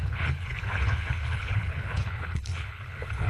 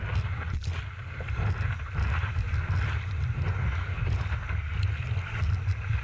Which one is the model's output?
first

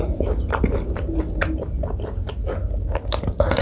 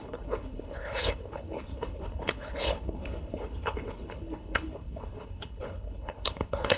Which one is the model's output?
second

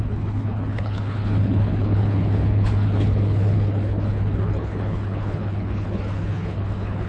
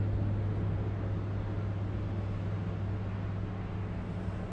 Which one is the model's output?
first